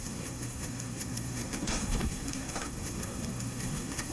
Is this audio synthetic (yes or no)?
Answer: yes